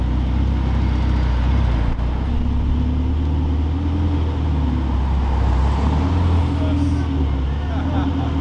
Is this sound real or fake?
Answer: real